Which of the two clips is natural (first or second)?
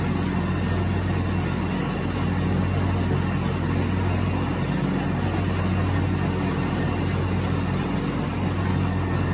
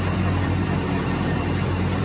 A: first